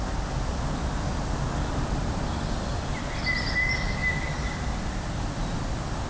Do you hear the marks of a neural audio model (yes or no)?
no